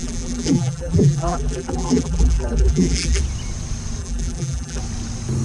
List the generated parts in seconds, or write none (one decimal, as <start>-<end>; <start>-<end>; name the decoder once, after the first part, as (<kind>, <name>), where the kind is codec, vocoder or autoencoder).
0.0-3.2 (vocoder, BigVGAN v2); 4.0-4.8